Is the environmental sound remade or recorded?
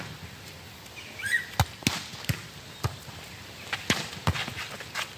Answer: recorded